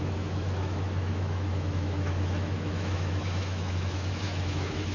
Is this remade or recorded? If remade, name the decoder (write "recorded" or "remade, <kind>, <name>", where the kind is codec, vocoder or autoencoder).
remade, autoencoder, DAC-VAE